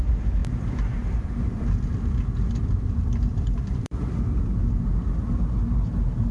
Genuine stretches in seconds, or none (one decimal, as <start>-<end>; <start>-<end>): 0.0-0.4; 4.2-6.3

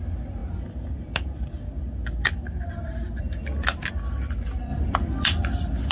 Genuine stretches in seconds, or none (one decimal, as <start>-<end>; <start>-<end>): 0.4-3.9

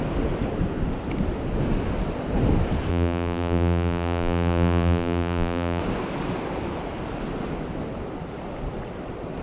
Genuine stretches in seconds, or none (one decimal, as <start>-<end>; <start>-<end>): 0.0-2.9; 5.8-9.4